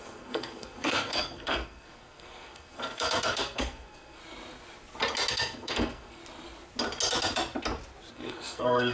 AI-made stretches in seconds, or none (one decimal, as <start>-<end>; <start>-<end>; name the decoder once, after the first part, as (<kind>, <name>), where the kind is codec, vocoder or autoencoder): 0.0-4.2 (codec, SNAC); 5.3-6.2; 8.1-8.9